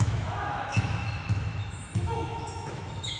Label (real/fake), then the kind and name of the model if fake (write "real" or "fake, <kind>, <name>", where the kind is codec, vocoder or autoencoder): fake, autoencoder, DAC-VAE